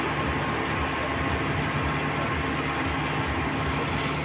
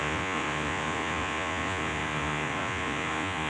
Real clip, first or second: first